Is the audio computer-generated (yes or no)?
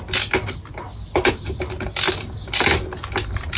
no